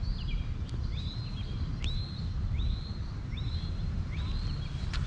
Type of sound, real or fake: real